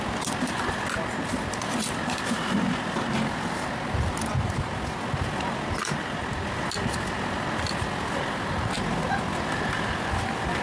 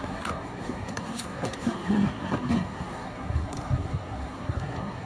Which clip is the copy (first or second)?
second